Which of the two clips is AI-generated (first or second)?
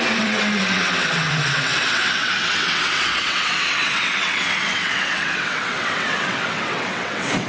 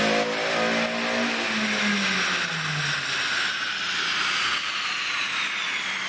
first